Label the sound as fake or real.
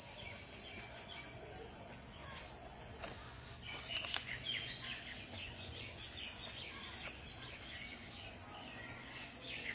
fake